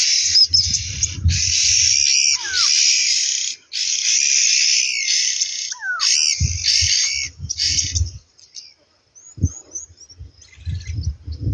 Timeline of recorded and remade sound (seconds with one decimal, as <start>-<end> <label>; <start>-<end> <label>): 0.0-1.8 remade; 1.8-11.5 recorded